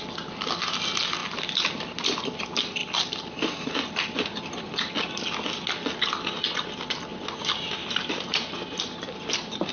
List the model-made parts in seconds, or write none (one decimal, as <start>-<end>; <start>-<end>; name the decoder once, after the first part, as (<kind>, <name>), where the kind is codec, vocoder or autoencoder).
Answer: 7.1-9.7 (vocoder, BigVGAN v2)